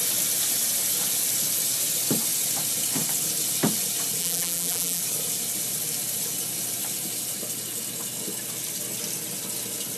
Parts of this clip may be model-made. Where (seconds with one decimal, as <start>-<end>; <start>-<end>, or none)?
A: 4.2-5.0